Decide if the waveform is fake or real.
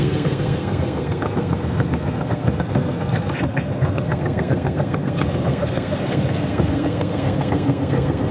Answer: fake